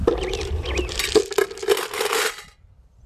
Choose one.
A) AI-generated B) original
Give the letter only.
A